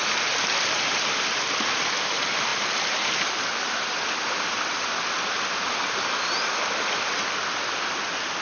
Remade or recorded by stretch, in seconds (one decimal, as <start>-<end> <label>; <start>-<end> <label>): 0.0-8.4 recorded